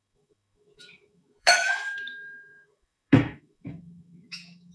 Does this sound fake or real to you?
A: fake